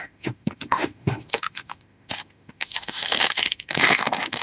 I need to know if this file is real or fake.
fake